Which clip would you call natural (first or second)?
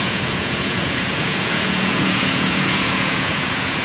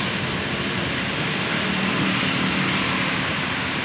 second